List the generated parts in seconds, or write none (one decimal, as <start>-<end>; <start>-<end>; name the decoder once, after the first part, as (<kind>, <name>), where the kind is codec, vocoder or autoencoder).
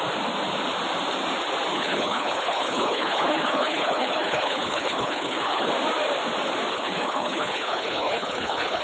1.7-5.7 (codec, HILCodec); 6.7-8.8